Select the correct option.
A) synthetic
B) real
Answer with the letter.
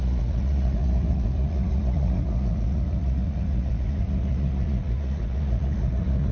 A